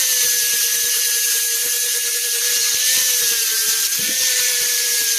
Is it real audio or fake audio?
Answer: fake